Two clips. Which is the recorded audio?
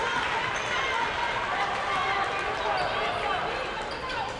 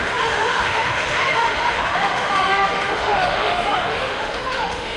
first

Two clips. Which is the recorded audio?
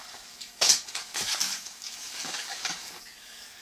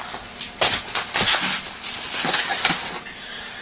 second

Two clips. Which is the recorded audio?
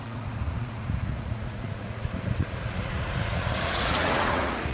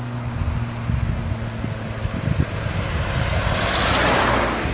second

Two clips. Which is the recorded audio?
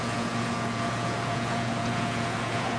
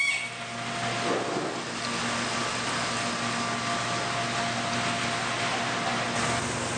second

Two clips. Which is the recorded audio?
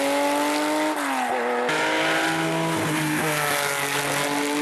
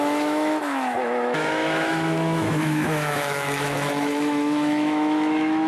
first